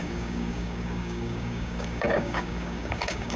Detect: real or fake fake